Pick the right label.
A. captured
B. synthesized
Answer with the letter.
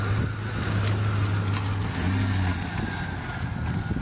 A